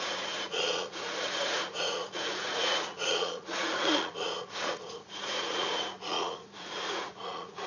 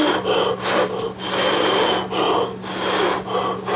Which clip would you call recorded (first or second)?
second